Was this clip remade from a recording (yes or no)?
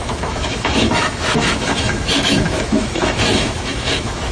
yes